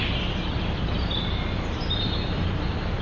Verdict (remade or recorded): remade